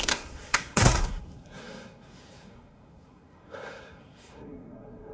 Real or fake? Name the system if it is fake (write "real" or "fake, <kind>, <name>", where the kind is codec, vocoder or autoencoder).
fake, codec, SNAC